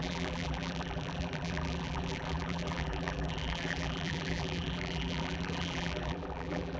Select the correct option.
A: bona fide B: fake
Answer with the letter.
B